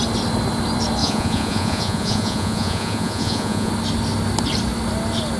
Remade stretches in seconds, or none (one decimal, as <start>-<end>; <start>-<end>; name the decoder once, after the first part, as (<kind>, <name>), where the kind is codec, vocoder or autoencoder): 1.0-3.7 (vocoder, Vocos)